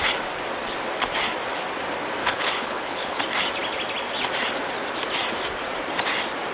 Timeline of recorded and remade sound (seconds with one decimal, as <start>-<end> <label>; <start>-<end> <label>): 0.0-2.2 recorded; 2.2-3.2 remade; 3.2-6.5 recorded